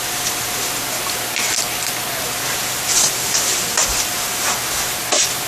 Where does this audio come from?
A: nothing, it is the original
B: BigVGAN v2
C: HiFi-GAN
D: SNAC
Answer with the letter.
A